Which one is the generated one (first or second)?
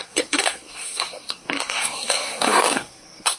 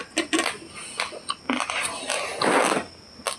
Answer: first